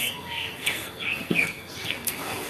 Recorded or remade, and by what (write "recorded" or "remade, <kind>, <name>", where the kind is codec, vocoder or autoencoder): remade, codec, SNAC